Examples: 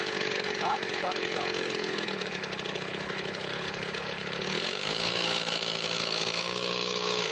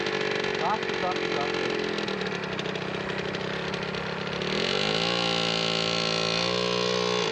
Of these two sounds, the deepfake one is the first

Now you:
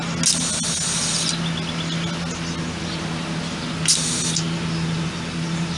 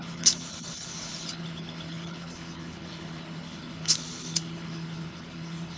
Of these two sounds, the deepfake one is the second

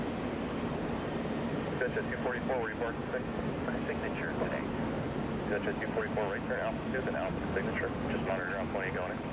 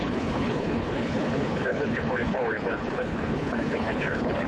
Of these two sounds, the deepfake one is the second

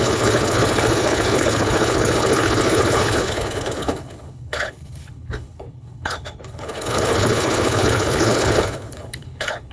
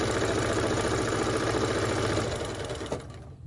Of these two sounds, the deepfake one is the first